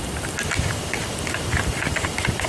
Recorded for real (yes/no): yes